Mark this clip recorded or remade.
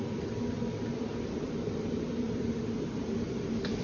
remade